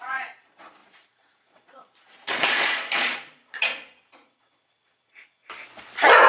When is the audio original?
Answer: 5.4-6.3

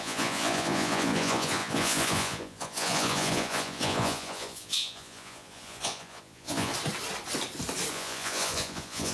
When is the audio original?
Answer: 6.7-7.9

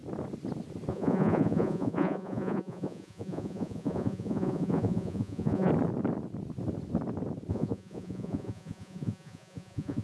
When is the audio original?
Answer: 0.0-0.9; 5.7-7.5

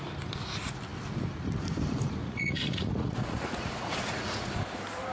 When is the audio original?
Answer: 0.0-2.2; 4.5-5.1

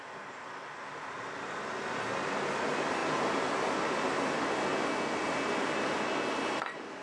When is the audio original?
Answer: 0.0-7.0

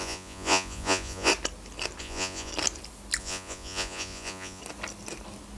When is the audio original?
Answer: 1.3-2.0; 2.5-3.2; 4.6-5.6

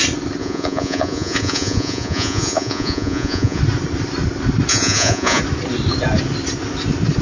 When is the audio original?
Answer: 0.0-0.4; 3.6-4.7; 5.4-7.2